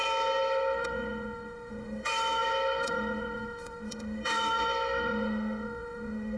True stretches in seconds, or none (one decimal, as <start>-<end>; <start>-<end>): none